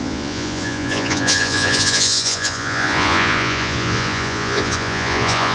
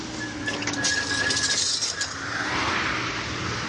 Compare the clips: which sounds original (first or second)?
second